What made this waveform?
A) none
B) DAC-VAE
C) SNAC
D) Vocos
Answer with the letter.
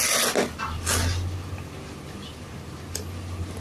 A